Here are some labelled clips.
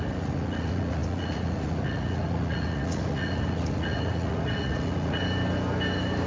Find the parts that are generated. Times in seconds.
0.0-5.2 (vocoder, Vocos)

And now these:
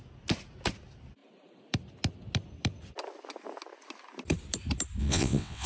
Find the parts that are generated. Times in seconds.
5.0-5.7 (vocoder, WaveNeXt)

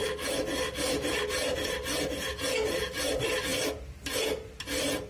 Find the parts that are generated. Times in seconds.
0.0-3.1 (vocoder, BigVGAN v2)

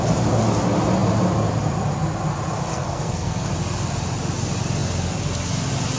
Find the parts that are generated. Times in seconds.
2.7-3.5 (codec, SNAC)

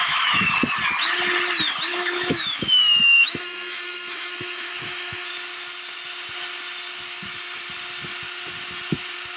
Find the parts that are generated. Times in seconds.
0.0-0.5 (autoencoder, DAC-VAE); 1.9-5.3

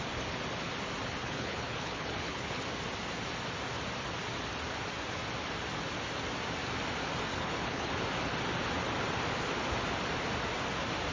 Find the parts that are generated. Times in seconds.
1.2-2.6 (codec, HILCodec); 7.3-7.9